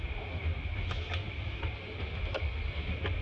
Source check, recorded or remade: recorded